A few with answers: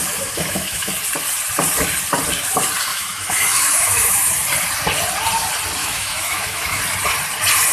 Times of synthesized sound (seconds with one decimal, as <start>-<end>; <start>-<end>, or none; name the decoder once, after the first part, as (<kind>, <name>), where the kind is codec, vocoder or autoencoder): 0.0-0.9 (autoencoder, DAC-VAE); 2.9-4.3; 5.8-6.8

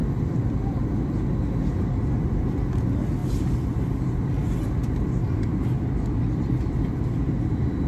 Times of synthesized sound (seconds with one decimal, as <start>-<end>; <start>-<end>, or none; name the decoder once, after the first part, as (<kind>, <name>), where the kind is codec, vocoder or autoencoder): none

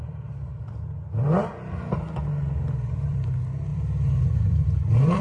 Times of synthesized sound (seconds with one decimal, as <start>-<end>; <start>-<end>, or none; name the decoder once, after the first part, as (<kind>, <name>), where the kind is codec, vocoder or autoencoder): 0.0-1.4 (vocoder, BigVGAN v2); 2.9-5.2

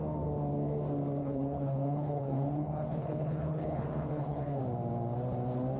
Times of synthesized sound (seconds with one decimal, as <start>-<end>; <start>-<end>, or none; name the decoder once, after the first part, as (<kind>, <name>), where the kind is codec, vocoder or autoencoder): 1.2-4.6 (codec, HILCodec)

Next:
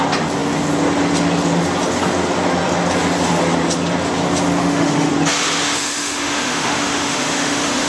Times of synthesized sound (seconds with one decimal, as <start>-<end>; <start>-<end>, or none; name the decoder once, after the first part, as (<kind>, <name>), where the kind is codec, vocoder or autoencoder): 4.6-5.1 (autoencoder, DAC-VAE); 5.6-7.9

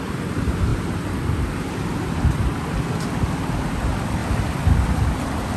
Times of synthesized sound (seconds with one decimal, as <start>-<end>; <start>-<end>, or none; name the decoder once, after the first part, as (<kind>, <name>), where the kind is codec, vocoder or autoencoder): none

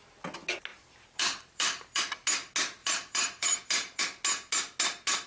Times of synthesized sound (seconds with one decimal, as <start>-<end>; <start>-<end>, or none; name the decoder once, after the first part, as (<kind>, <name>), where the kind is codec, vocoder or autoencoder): 0.7-2.0 (vocoder, BigVGAN v2); 2.8-4.0